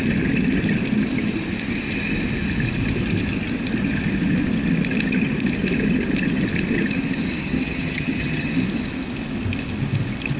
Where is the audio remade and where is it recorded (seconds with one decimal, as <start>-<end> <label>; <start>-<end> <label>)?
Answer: 0.0-7.4 recorded; 7.4-8.5 remade; 8.5-10.4 recorded